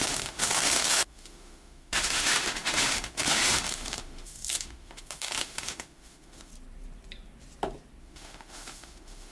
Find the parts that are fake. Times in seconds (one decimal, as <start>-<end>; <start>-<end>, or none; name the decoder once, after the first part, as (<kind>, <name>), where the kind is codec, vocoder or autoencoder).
0.0-6.5 (autoencoder, DAC-VAE); 8.0-9.3